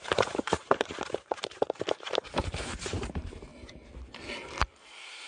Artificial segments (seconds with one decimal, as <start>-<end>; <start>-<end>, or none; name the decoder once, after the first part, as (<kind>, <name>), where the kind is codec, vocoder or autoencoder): 0.0-3.5 (vocoder, BigVGAN v2); 4.7-5.3